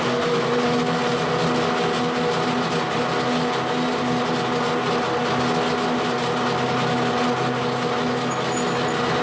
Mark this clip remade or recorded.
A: recorded